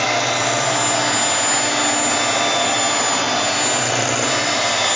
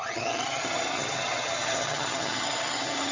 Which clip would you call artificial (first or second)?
second